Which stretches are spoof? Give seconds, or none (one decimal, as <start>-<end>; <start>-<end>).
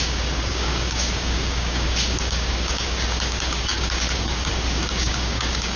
0.0-5.8